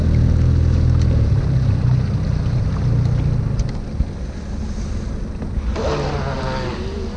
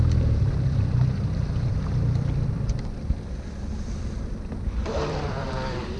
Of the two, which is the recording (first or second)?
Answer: first